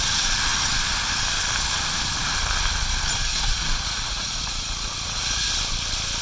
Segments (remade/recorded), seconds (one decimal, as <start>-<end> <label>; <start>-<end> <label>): 0.0-3.3 recorded; 3.3-5.5 remade; 5.5-6.2 recorded

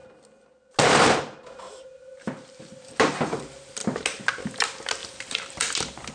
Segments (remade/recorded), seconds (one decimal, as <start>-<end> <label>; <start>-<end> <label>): 0.0-5.0 recorded; 5.0-6.1 remade

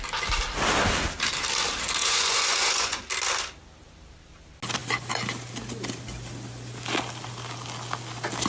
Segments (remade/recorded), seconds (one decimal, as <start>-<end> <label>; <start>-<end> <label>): 0.0-2.0 recorded; 2.0-3.0 remade; 3.0-8.5 recorded

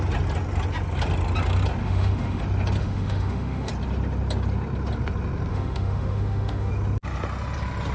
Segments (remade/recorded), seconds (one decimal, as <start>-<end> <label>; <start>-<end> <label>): 0.0-1.8 recorded; 1.8-2.4 remade; 2.4-2.8 recorded; 2.8-3.7 remade; 3.7-5.5 recorded; 5.5-6.7 remade; 6.7-7.9 recorded

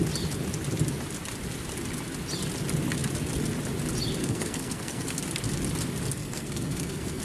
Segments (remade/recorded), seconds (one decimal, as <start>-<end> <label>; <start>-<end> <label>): 0.0-4.2 recorded; 4.2-5.2 remade; 5.2-6.2 recorded; 6.2-7.2 remade

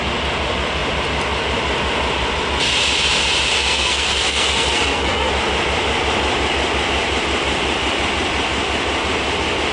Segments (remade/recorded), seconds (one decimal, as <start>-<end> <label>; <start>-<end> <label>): 0.0-3.5 recorded; 3.5-5.3 remade; 5.3-9.7 recorded

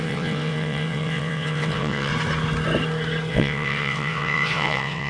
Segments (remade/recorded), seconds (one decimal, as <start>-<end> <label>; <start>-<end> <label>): 0.0-2.1 remade; 2.1-3.3 recorded; 3.3-5.1 remade

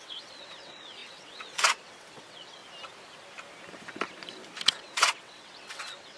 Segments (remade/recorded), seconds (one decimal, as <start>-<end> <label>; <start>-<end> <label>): 0.0-2.6 remade; 2.6-4.7 recorded; 4.7-6.2 remade